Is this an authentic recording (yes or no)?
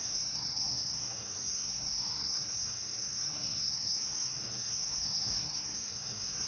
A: no